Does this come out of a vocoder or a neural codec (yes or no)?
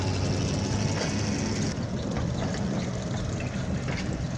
no